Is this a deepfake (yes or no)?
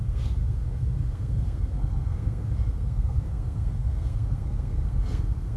yes